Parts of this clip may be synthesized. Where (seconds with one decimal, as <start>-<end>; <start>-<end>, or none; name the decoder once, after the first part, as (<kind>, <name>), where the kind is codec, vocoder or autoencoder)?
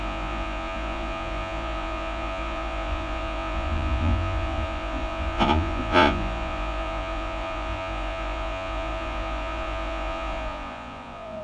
0.0-11.4 (vocoder, Vocos)